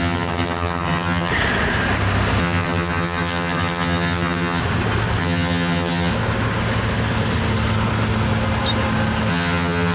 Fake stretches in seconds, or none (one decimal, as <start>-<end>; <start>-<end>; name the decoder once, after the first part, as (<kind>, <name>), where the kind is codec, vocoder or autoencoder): 0.0-1.3 (vocoder, HiFi-GAN); 2.4-4.6; 5.2-6.1; 9.3-9.9